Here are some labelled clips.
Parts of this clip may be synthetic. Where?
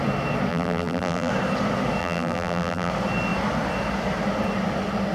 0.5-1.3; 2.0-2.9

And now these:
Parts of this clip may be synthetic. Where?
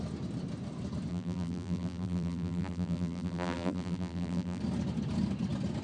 1.1-4.6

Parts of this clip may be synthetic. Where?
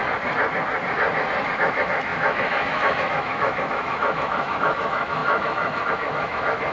1.6-6.7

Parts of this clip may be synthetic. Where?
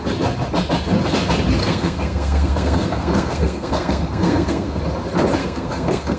1.6-4.8; 5.4-6.2